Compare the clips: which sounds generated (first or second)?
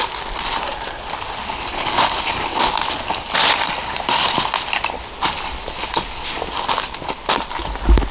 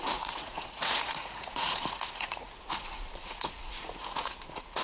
second